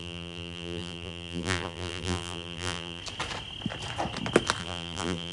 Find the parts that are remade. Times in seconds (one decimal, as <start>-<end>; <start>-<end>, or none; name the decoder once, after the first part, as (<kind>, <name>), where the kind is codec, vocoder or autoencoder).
0.0-3.0 (vocoder, BigVGAN v2); 4.6-5.3